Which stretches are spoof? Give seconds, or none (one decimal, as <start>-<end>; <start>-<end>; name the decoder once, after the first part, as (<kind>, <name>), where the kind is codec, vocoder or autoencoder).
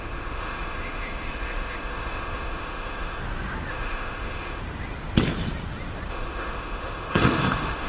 0.0-3.2 (autoencoder, DAC-VAE); 3.7-4.6; 6.1-7.9